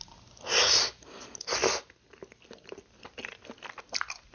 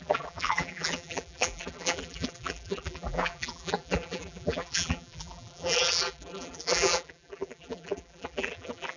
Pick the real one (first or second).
first